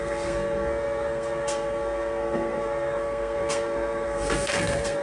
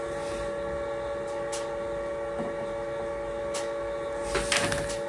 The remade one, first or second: first